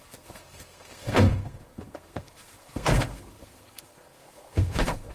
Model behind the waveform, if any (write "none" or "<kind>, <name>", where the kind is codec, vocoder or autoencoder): codec, SNAC